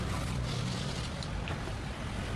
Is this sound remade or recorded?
remade